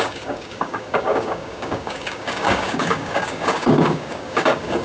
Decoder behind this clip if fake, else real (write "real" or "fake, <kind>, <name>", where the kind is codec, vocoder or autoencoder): fake, codec, DAC